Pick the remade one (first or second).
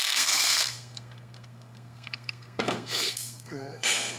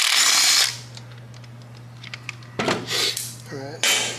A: first